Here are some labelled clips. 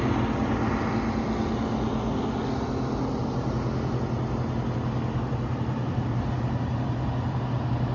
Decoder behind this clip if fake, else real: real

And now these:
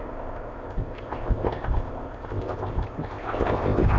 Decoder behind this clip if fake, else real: fake, codec, ZipCodec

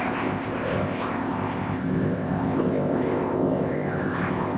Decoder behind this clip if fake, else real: fake, codec, ZipCodec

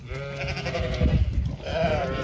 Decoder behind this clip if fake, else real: real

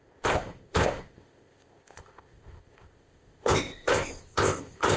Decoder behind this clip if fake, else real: fake, codec, ZipCodec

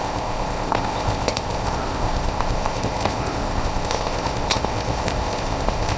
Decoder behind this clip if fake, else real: fake, codec, ZipCodec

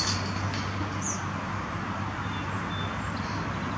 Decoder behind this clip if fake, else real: real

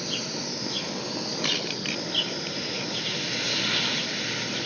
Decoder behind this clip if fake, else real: real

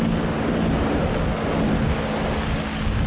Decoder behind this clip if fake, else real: real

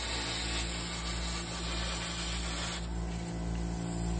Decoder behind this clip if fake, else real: real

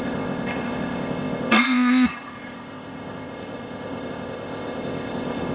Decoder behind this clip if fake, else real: fake, codec, ZipCodec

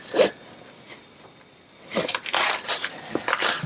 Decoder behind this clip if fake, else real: real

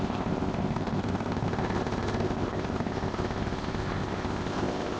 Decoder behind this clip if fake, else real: fake, codec, ZipCodec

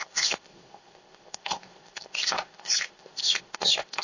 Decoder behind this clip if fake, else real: fake, codec, ZipCodec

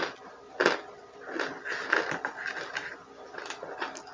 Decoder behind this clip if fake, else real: real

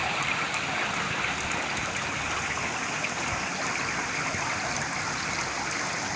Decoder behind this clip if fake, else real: real